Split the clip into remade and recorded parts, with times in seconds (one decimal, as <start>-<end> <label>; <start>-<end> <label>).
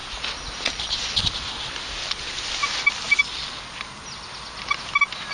0.0-5.3 recorded